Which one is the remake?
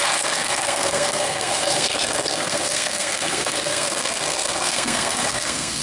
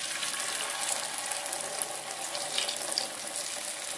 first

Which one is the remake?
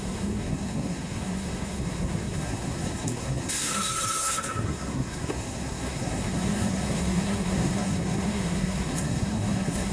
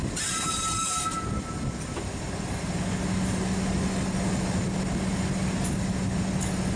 first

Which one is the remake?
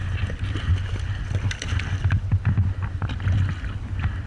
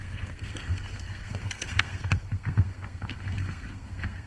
second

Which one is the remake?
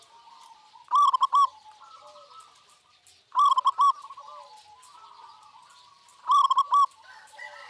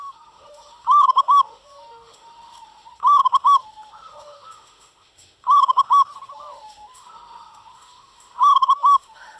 second